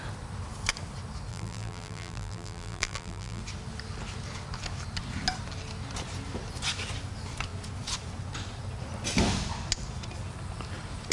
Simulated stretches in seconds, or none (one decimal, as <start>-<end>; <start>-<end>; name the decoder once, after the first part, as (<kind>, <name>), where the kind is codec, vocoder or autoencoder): 1.3-3.4 (vocoder, BigVGAN v2)

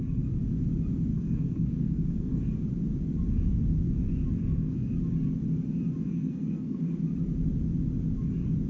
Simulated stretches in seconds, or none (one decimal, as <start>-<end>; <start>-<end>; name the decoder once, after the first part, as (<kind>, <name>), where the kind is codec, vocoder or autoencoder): 1.1-2.4 (codec, SNAC); 4.4-4.9; 6.1-6.8

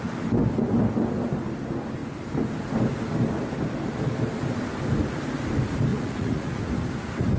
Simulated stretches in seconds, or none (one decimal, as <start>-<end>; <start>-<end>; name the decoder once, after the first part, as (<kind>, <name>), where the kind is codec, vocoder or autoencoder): 5.9-6.6 (vocoder, Vocos)

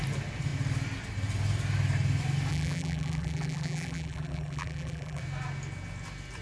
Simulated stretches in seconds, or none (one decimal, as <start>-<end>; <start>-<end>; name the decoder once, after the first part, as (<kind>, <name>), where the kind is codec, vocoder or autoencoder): 2.5-5.2 (vocoder, BigVGAN v2)

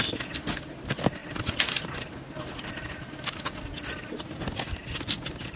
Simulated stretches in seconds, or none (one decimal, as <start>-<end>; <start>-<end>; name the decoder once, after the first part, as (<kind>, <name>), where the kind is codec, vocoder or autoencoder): none

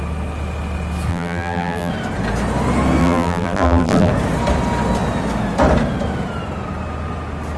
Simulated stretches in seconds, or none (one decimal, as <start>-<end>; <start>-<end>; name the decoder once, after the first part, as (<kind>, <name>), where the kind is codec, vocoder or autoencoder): 1.1-1.9 (vocoder, BigVGAN v2); 3.0-4.1

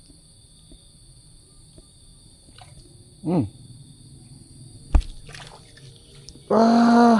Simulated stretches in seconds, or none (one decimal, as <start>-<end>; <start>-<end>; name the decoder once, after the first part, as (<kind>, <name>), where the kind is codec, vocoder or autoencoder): none

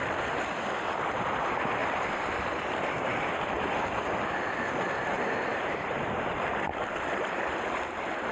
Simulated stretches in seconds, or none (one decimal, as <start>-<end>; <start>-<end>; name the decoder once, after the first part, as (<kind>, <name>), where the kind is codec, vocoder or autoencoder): none